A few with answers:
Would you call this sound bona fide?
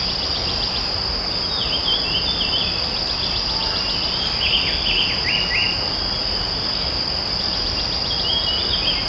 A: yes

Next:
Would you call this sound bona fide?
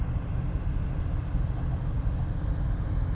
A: yes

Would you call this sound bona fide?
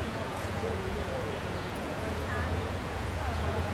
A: no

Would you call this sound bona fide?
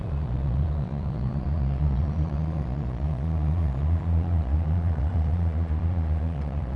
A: no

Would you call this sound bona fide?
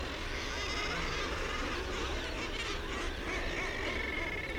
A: yes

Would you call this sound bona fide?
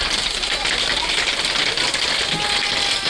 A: yes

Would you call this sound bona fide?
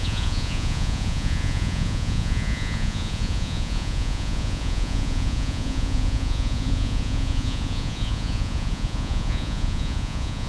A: no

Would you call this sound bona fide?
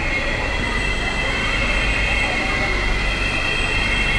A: yes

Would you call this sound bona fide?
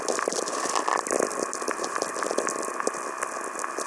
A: yes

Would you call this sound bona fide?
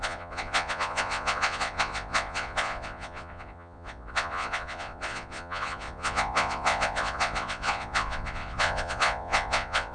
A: no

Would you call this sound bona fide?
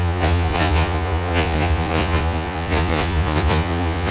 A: no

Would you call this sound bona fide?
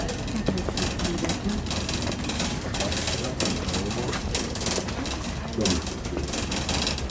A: yes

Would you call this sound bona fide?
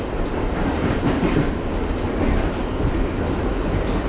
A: yes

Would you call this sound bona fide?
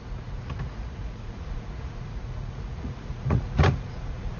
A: no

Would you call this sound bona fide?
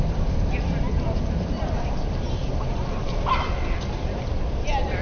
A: yes